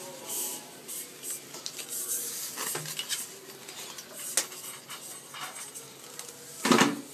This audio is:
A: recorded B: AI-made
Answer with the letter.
A